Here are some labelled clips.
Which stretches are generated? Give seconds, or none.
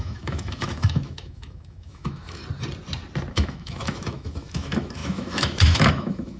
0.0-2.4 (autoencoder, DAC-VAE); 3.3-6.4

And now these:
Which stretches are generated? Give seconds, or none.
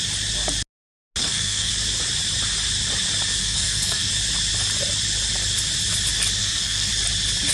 1.2-1.7 (codec, SNAC); 3.4-4.1; 6.4-6.9